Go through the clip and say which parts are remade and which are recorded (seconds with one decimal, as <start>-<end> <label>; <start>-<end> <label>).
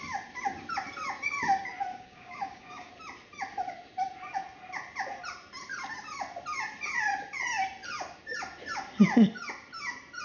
0.0-1.9 recorded; 1.9-2.9 remade; 2.9-10.2 recorded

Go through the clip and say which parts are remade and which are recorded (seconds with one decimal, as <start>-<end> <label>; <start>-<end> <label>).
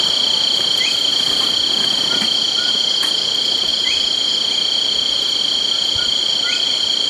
0.0-7.1 remade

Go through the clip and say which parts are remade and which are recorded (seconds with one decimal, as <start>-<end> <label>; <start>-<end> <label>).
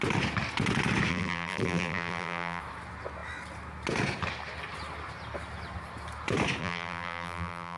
0.0-1.1 recorded; 1.1-2.6 remade; 2.6-6.6 recorded; 6.6-7.8 remade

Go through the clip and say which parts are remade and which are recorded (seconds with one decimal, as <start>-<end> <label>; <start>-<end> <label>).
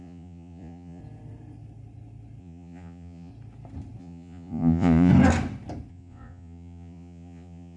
0.0-1.0 remade; 1.0-2.4 recorded; 2.4-3.3 remade; 3.3-4.0 recorded; 4.0-5.1 remade; 5.1-5.9 recorded; 5.9-7.8 remade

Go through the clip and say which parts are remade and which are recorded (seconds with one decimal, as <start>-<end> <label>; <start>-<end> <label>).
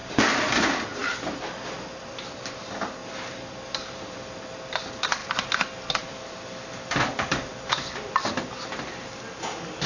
0.0-0.5 remade; 0.5-3.0 recorded; 3.0-4.5 remade; 4.5-5.2 recorded; 5.2-8.2 remade; 8.2-9.9 recorded